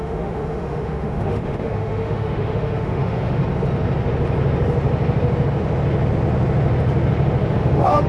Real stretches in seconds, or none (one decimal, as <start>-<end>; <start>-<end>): 3.4-7.5